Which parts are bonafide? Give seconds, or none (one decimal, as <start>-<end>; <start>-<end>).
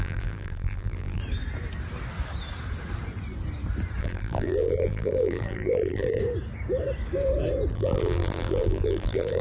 1.2-4.0; 6.2-7.7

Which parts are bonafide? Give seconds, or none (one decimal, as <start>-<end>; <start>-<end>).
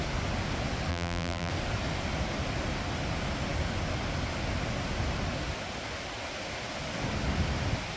0.0-0.9; 1.5-8.0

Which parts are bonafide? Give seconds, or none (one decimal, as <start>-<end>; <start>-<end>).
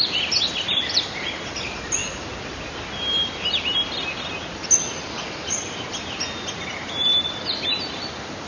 2.0-5.9; 7.1-7.9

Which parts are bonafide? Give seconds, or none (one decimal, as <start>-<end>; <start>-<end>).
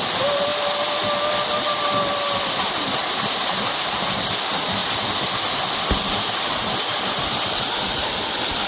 0.5-1.6